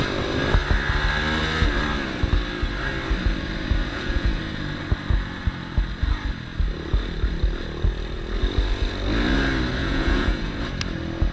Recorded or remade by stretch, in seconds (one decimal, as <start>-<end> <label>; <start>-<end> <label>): 0.0-3.8 recorded; 3.8-4.4 remade; 4.4-9.8 recorded; 9.8-10.5 remade; 10.5-11.3 recorded